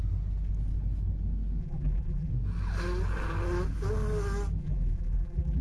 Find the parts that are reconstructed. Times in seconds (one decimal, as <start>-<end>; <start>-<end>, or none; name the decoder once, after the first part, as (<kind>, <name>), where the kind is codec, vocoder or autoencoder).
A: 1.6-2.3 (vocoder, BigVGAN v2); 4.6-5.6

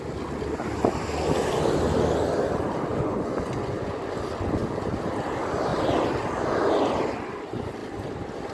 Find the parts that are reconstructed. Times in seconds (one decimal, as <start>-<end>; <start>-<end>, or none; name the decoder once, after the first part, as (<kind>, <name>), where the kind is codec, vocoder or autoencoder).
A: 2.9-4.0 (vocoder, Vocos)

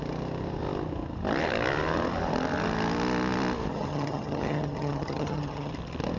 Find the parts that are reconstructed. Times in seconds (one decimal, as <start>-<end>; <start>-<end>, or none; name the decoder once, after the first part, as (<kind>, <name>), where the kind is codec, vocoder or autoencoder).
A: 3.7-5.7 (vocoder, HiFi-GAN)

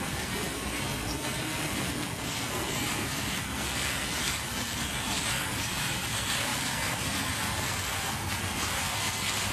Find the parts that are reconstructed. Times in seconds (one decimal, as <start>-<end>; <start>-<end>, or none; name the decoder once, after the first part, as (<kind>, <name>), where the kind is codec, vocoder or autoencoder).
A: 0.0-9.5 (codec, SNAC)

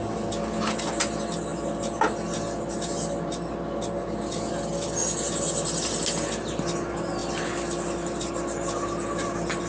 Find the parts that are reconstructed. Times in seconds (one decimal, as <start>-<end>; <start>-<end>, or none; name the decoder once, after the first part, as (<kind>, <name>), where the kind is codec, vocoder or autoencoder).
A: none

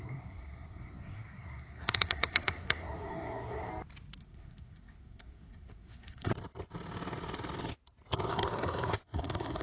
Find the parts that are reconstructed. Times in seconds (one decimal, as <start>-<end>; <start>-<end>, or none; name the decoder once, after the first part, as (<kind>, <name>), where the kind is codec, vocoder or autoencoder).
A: 0.0-3.7 (codec, SNAC); 4.2-6.3; 8.3-9.6

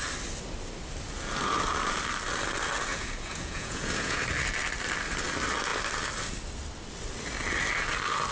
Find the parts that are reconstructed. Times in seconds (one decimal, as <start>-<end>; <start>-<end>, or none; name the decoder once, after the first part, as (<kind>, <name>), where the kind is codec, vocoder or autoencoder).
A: 2.9-4.2 (vocoder, Vocos)

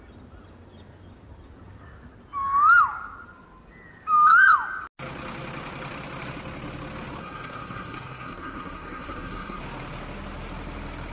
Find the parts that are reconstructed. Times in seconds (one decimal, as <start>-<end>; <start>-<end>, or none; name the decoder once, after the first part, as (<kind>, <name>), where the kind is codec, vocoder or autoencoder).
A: 7.2-9.6 (codec, SNAC)